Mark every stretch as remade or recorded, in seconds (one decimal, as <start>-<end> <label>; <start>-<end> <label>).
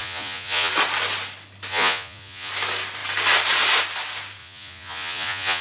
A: 0.0-0.7 remade; 0.7-1.7 recorded; 1.7-2.5 remade; 2.5-4.4 recorded; 4.4-5.6 remade